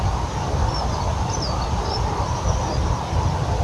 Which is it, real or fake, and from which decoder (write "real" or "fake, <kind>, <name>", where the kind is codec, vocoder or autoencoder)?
real